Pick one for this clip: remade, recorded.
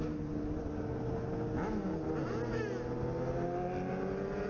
recorded